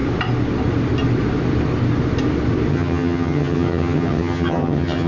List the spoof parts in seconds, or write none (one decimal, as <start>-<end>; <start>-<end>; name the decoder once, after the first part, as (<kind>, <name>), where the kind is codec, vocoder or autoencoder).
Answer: 2.7-5.1 (vocoder, HiFi-GAN)